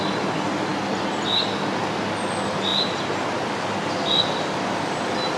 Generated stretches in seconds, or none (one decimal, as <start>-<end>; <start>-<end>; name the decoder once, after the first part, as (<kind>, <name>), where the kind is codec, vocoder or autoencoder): none